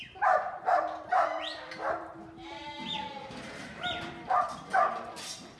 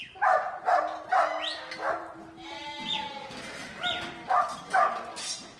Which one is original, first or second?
second